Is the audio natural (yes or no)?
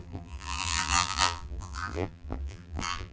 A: no